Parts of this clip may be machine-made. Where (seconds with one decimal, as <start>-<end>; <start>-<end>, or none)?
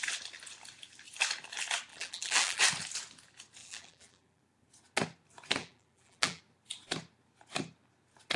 1.9-2.6; 3.6-4.4; 5.6-6.4